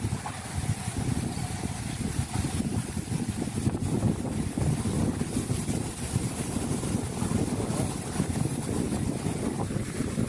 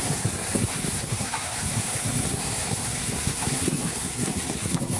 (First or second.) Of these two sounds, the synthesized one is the second